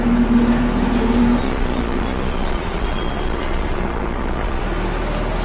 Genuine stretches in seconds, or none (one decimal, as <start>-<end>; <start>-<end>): 0.0-1.4; 4.6-5.4